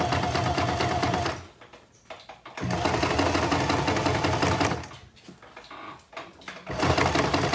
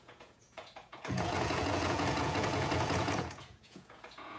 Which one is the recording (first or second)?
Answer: first